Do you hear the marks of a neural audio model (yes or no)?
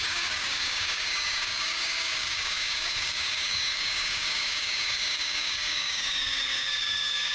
yes